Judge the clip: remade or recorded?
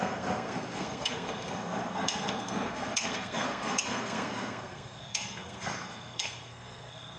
remade